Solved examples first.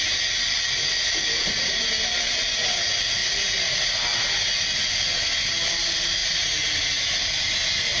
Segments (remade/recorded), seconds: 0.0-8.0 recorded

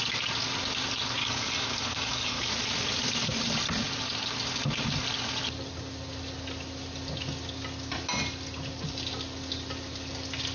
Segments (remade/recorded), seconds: 0.0-1.2 recorded; 1.2-2.5 remade; 2.5-10.5 recorded